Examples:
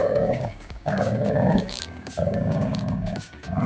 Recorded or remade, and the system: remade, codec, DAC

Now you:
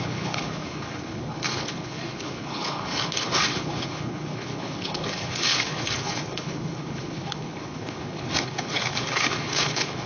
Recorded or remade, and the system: remade, codec, HILCodec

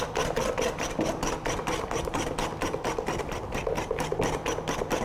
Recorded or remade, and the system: recorded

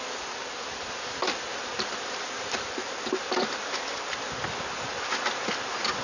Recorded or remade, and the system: recorded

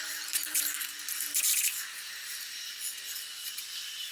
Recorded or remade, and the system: remade, vocoder, BigVGAN v2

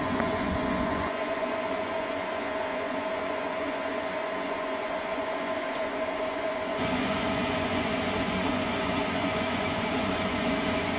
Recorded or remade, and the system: remade, vocoder, Vocos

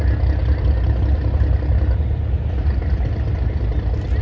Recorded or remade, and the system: recorded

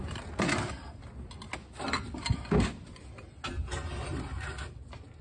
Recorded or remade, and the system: recorded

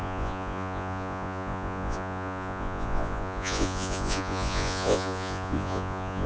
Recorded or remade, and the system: remade, vocoder, Vocos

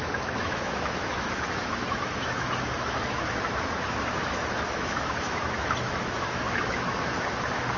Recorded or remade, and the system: remade, autoencoder, DAC-VAE